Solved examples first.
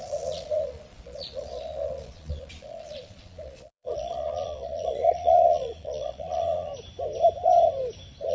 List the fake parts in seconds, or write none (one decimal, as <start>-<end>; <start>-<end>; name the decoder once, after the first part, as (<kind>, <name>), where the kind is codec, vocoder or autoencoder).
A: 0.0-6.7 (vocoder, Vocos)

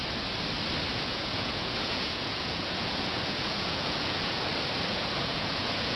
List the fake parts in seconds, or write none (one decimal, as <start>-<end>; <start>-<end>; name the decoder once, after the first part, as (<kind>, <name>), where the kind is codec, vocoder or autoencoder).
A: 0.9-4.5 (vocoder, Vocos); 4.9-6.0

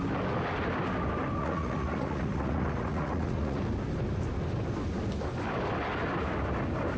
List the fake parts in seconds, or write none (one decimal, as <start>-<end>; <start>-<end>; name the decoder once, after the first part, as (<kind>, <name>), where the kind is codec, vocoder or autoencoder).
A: 1.4-3.6 (vocoder, Vocos)

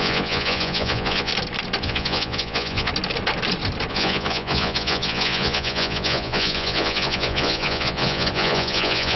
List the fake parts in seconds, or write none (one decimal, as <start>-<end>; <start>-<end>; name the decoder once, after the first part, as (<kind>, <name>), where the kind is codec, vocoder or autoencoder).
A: 0.0-1.3 (vocoder, Vocos); 1.8-2.9; 3.9-9.2

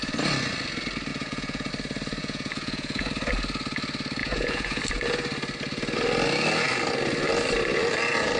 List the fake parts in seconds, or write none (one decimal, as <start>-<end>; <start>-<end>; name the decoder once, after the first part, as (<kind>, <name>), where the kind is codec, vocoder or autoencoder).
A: 1.1-1.7 (vocoder, Vocos); 2.2-3.1; 4.2-4.8

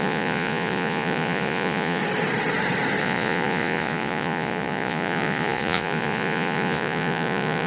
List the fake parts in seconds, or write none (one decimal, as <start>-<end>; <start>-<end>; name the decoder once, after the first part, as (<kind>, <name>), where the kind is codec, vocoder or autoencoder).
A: 0.0-2.0 (vocoder, Vocos); 3.0-7.7